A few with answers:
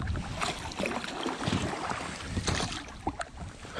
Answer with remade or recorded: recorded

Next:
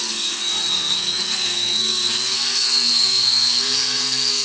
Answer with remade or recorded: remade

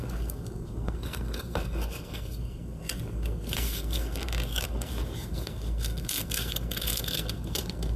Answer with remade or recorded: remade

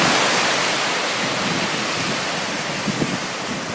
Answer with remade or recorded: recorded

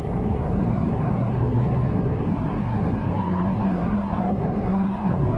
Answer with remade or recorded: remade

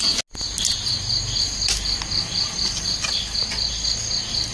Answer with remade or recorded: recorded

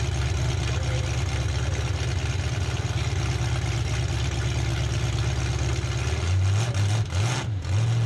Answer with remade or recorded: recorded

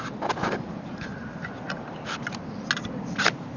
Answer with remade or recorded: recorded